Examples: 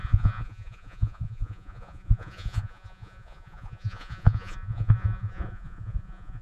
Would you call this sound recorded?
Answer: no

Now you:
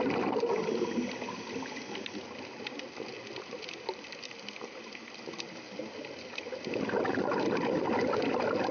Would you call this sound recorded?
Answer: yes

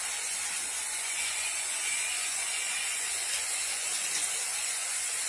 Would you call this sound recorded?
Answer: no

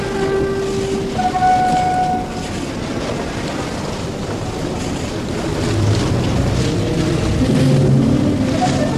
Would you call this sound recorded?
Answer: yes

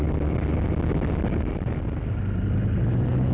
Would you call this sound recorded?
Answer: yes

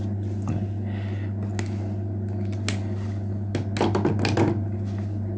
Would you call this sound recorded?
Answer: yes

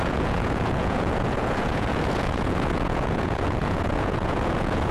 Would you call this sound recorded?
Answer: no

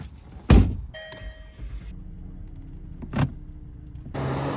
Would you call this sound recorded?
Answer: yes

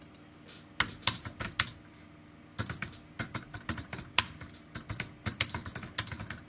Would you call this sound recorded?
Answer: yes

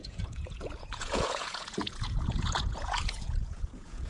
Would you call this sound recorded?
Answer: no